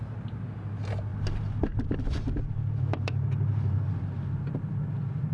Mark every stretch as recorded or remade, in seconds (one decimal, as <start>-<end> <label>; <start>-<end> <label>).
0.0-1.1 recorded; 1.1-3.8 remade; 3.8-5.3 recorded